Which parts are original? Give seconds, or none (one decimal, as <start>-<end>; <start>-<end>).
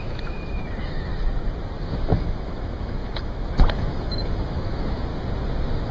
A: 1.1-1.8; 5.1-5.9